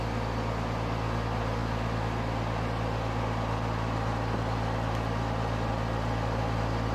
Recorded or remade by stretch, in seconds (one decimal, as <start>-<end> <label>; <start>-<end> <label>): 0.0-6.9 recorded